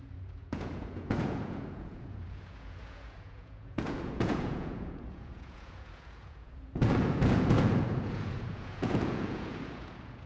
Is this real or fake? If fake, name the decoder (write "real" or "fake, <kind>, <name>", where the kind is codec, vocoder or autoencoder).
fake, vocoder, Vocos